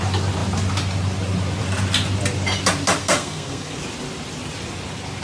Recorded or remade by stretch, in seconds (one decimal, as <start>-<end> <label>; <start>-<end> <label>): 0.0-3.0 recorded; 3.0-3.8 remade; 3.8-5.2 recorded